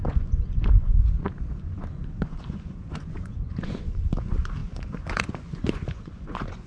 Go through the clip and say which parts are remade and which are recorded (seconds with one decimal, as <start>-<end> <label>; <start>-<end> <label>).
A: 0.0-6.7 remade